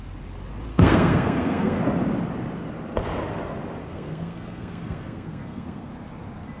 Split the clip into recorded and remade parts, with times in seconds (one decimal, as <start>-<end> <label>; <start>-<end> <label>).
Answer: 0.0-0.7 recorded; 0.7-1.8 remade; 1.8-3.8 recorded; 3.8-5.9 remade; 5.9-6.6 recorded